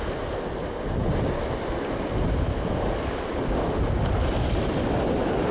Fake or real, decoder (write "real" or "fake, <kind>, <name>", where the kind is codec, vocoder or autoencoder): real